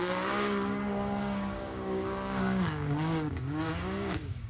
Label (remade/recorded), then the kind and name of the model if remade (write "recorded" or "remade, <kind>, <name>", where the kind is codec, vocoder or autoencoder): remade, codec, DAC